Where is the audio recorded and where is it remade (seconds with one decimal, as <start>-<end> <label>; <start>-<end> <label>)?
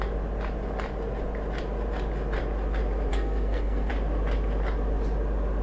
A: 0.0-3.1 recorded; 3.1-3.9 remade; 3.9-5.6 recorded